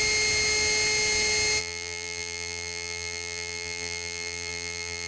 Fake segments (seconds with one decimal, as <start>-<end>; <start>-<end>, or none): 1.6-5.1